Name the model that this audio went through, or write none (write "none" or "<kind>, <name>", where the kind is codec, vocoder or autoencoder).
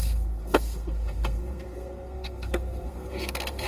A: codec, SNAC